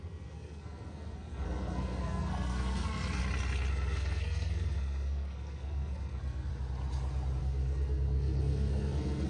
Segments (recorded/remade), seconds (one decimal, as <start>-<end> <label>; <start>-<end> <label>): 0.0-3.2 remade; 3.2-3.7 recorded; 3.7-6.5 remade; 6.5-7.4 recorded; 7.4-9.3 remade